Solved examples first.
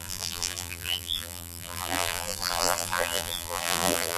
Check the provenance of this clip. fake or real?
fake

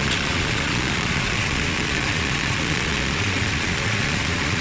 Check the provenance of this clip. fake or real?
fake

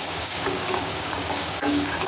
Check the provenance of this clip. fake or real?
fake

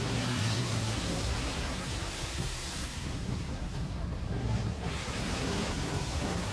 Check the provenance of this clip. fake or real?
fake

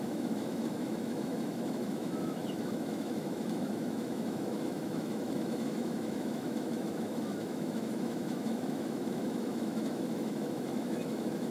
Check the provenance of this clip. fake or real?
fake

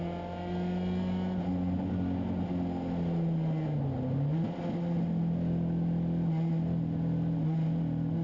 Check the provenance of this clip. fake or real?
real